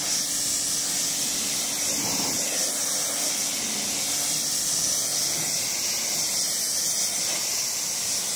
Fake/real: real